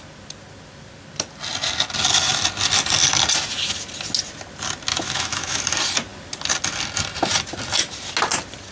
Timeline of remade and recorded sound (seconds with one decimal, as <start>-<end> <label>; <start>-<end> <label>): 0.0-4.9 recorded; 4.9-5.6 remade; 5.6-8.7 recorded